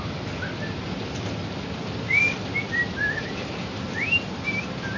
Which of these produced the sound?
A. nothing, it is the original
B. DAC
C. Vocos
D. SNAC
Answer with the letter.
A